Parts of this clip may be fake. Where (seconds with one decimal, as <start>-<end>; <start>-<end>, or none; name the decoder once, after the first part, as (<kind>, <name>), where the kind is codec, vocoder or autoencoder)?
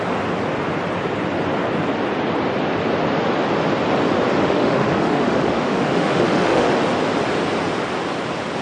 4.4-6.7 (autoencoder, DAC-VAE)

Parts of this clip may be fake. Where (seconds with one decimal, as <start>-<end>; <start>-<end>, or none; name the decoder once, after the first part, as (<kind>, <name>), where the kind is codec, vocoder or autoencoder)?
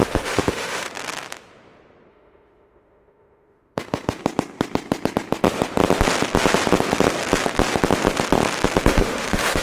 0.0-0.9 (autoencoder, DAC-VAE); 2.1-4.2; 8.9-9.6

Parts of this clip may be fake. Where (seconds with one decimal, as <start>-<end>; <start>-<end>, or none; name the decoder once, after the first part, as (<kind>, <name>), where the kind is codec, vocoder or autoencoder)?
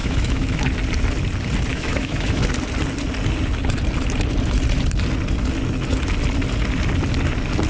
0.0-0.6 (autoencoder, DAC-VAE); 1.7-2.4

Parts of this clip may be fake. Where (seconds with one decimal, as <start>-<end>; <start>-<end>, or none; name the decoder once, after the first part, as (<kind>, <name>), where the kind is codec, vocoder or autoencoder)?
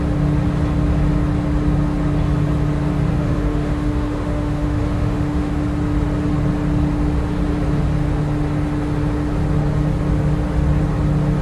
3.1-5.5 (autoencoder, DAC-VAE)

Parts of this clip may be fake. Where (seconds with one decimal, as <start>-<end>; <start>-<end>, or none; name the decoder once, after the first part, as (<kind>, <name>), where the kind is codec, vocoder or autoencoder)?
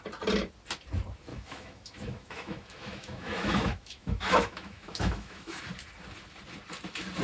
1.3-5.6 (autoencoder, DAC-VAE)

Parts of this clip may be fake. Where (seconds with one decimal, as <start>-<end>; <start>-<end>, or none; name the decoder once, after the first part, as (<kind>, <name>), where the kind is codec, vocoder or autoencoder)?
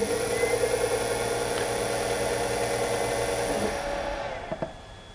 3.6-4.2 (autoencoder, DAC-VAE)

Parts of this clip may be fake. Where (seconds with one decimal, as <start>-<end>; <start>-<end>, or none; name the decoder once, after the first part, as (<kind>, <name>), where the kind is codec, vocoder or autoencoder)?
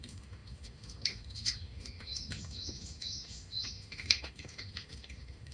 0.0-5.5 (autoencoder, DAC-VAE)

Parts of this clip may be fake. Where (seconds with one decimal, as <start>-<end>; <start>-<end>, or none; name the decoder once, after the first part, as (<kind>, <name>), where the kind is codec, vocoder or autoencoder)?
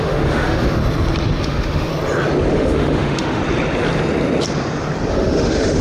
0.0-0.8 (autoencoder, DAC-VAE); 1.4-1.9; 2.5-3.4; 5.1-5.8